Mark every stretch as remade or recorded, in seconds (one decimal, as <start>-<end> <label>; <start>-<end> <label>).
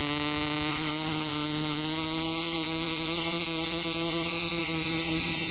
0.0-0.7 recorded; 0.7-5.5 remade